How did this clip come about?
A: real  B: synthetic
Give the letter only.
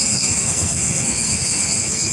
B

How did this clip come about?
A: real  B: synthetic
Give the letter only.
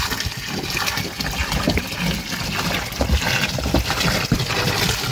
A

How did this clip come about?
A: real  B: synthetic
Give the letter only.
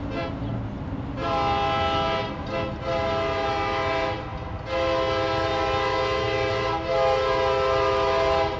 A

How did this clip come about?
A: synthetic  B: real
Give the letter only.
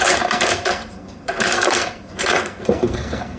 A